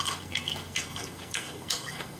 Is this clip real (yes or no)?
no